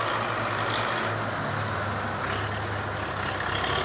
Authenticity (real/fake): real